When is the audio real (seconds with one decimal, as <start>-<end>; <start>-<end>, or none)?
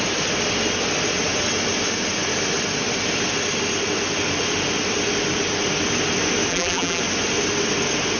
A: 0.0-6.5; 7.0-8.2